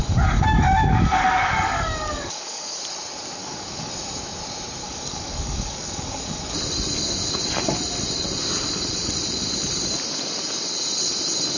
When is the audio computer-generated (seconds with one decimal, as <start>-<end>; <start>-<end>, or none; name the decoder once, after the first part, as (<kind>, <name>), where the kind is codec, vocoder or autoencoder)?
0.0-2.8 (codec, DAC); 3.4-3.9; 4.8-6.4